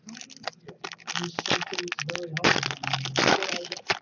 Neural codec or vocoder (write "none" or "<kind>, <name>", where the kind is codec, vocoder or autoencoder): none